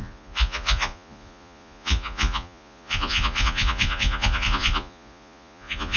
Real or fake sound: fake